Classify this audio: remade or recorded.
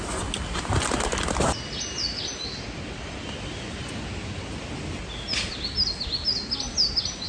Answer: recorded